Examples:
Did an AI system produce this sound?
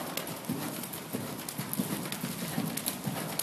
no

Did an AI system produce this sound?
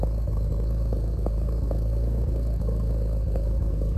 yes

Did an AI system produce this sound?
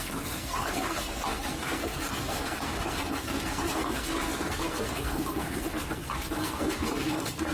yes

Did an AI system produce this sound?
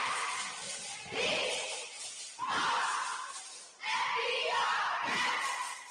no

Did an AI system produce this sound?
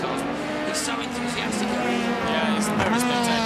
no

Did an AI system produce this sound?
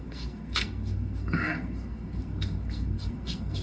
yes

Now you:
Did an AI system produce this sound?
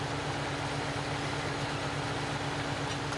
no